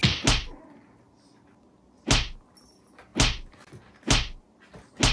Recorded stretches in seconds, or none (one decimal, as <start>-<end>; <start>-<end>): 0.0-5.1